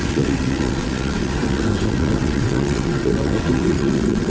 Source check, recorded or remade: remade